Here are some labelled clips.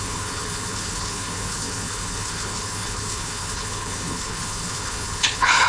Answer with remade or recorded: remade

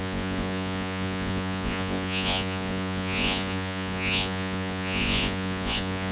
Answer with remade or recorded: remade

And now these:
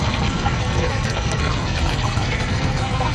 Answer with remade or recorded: remade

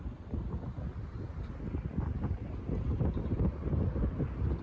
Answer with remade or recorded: recorded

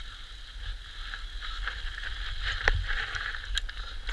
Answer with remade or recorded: recorded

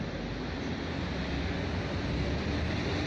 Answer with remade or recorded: recorded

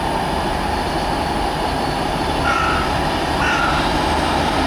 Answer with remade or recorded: recorded